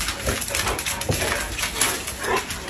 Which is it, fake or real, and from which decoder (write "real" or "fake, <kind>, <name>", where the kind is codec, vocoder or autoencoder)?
real